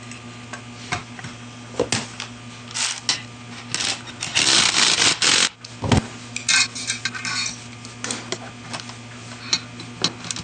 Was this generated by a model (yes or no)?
no